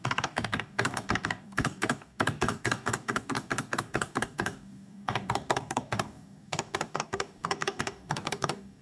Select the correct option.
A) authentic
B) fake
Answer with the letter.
B